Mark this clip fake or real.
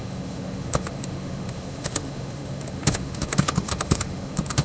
fake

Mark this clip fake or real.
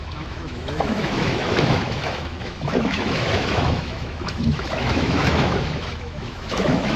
fake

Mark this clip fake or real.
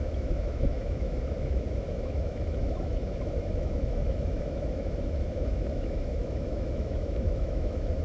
fake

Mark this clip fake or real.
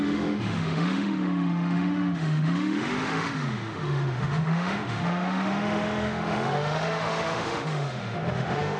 fake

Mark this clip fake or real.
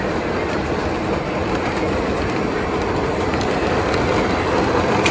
real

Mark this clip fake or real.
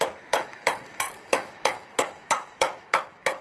fake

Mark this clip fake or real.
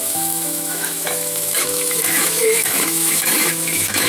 fake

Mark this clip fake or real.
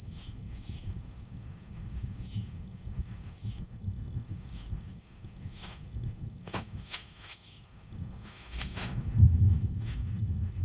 fake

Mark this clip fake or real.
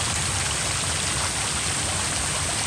real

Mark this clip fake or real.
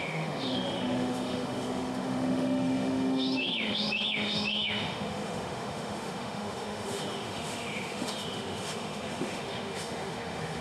fake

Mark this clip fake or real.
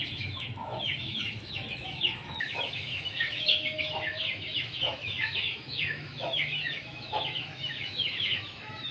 fake